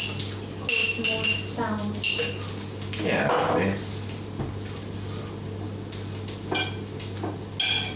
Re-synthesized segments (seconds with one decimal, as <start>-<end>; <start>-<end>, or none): none